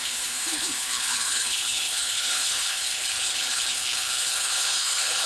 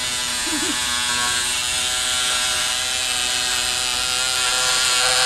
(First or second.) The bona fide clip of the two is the second